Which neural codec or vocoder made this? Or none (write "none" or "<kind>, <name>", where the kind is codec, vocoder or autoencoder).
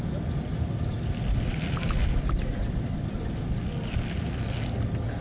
none